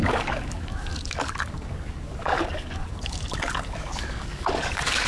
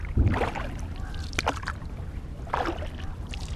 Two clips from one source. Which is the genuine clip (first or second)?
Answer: second